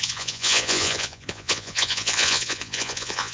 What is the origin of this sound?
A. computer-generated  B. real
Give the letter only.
A